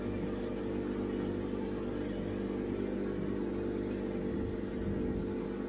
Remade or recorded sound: recorded